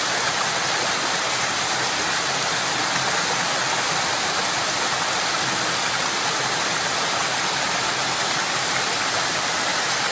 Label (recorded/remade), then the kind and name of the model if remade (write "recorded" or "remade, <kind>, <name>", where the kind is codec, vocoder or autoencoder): recorded